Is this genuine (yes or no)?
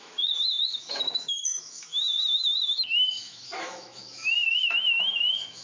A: no